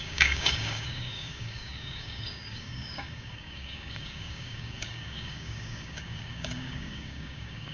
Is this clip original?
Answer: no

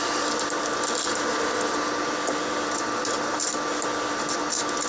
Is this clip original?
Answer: yes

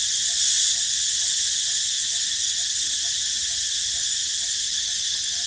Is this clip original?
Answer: yes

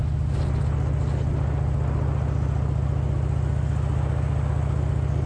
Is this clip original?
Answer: yes